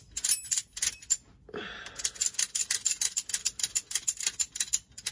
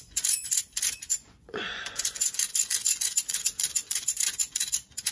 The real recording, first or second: first